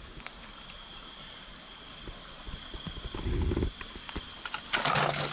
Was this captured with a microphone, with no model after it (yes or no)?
yes